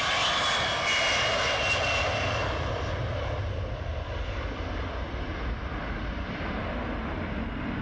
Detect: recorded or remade recorded